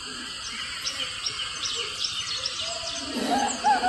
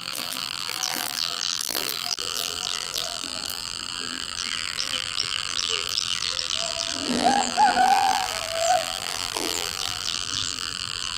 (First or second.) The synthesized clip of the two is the second